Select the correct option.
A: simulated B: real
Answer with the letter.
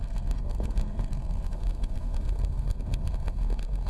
A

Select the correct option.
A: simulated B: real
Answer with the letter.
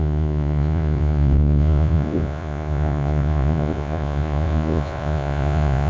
A